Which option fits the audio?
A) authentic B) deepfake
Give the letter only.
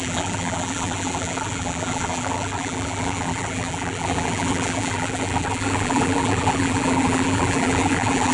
B